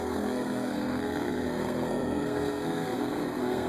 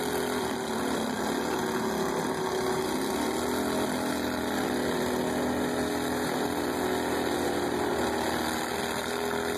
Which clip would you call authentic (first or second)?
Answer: second